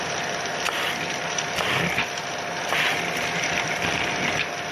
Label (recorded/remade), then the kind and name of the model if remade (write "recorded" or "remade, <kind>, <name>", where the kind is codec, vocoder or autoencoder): remade, vocoder, BigVGAN v2